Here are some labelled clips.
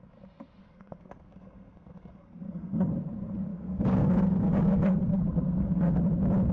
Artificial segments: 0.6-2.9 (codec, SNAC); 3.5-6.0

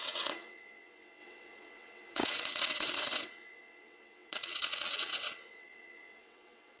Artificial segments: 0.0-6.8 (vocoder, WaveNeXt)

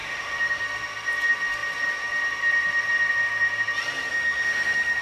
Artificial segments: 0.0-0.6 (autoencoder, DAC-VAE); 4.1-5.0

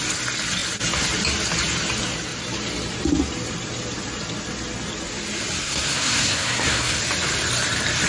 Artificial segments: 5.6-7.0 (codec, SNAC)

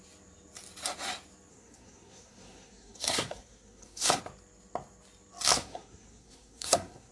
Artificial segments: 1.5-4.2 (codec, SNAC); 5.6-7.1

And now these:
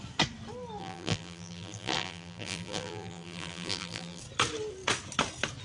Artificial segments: 0.8-4.2 (vocoder, BigVGAN v2)

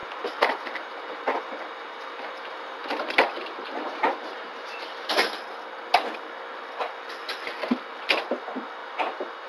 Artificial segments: 0.0-5.1 (vocoder, BigVGAN v2); 8.8-9.5

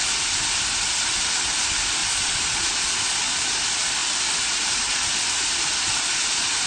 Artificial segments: 2.0-3.4 (vocoder, Vocos)